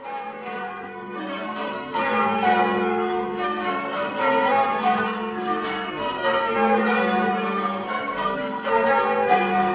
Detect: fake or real fake